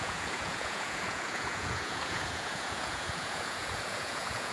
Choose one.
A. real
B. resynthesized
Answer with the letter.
B